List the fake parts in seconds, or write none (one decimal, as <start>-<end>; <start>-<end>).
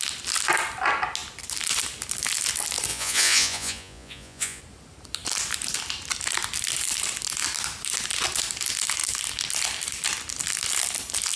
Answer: 2.9-4.6